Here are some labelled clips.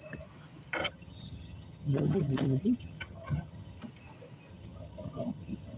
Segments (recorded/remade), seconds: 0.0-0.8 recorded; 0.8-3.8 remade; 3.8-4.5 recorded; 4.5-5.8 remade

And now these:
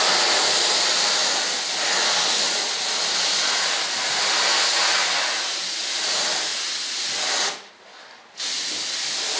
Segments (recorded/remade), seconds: 0.0-9.4 recorded